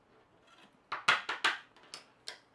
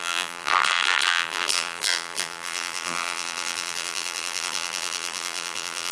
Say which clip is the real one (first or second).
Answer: first